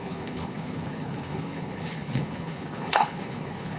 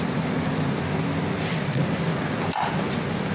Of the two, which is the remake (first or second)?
first